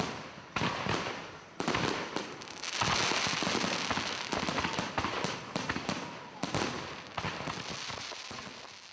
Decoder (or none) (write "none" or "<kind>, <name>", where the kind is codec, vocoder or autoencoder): none